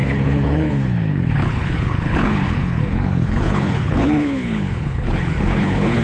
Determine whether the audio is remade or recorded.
remade